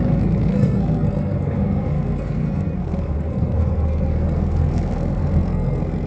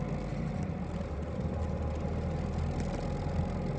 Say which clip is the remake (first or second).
first